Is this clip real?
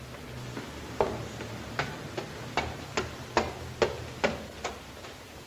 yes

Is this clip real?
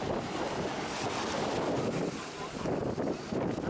yes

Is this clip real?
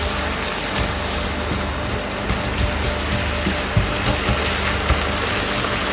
yes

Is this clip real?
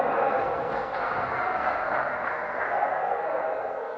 no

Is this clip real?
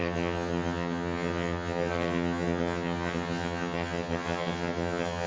no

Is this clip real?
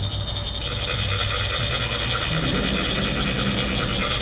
yes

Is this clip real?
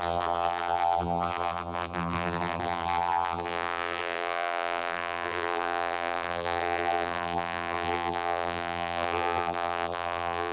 no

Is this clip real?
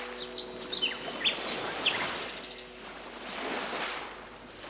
yes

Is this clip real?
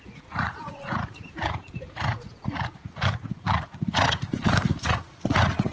no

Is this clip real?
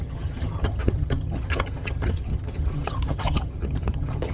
no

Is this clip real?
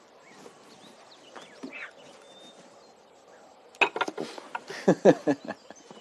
yes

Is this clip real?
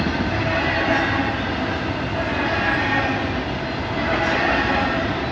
yes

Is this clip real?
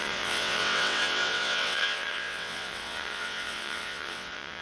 no